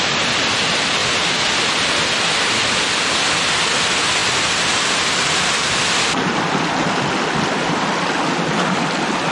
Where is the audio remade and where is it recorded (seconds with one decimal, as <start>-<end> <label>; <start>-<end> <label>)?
0.0-9.3 recorded